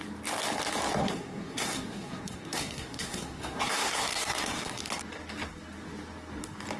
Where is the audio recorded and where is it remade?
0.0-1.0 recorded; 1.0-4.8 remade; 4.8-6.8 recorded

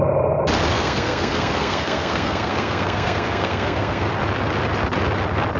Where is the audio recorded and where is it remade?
0.0-0.7 recorded; 0.7-4.1 remade; 4.1-5.6 recorded

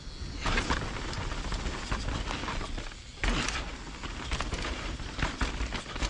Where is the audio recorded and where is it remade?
0.0-4.1 recorded; 4.1-5.4 remade; 5.4-6.1 recorded

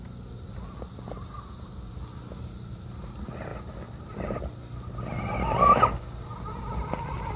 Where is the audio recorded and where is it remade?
0.0-7.4 recorded

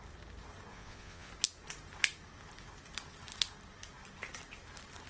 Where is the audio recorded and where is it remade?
0.0-0.7 recorded; 0.7-1.3 remade; 1.3-5.1 recorded

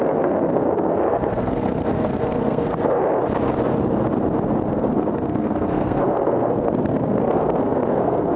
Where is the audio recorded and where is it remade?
0.0-3.0 remade; 3.0-4.7 recorded; 4.7-8.4 remade

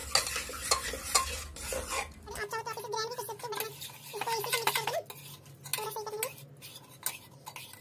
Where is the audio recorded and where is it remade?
0.0-7.8 recorded

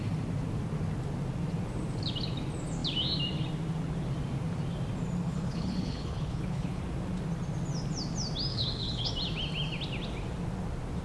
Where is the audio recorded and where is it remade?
0.0-5.3 recorded; 5.3-6.8 remade; 6.8-8.5 recorded; 8.5-9.1 remade; 9.1-11.0 recorded